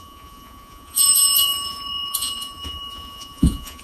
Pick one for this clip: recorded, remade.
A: remade